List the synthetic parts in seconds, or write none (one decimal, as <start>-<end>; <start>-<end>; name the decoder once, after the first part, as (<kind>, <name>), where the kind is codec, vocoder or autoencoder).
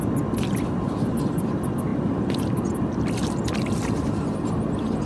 none